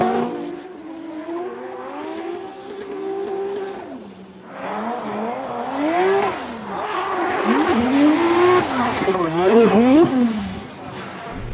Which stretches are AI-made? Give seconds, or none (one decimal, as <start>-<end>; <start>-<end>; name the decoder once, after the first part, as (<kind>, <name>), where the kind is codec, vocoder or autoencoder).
8.8-10.7 (codec, SNAC)